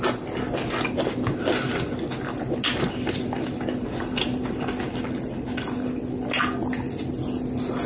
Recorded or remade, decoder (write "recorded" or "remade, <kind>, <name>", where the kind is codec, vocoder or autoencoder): recorded